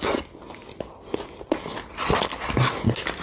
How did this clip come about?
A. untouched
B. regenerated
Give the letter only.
A